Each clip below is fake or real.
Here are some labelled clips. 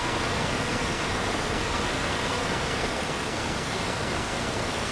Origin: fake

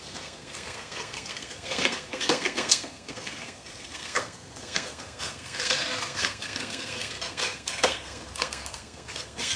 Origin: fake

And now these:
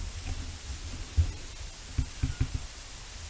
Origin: real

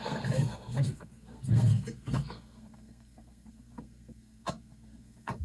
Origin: fake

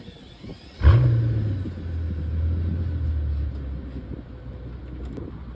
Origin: real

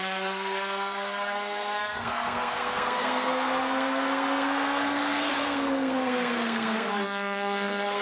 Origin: fake